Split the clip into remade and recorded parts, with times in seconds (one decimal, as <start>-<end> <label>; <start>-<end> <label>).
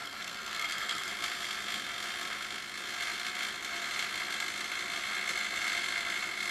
0.0-1.1 remade; 1.1-6.5 recorded